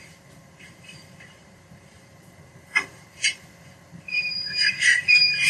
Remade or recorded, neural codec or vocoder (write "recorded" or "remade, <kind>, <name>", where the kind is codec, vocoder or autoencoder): remade, vocoder, BigVGAN v2